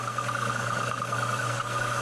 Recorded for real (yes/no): no